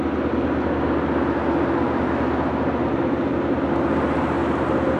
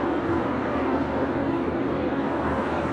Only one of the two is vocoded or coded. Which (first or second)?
second